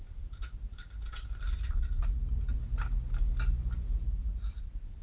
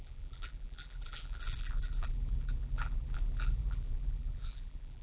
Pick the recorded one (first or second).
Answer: first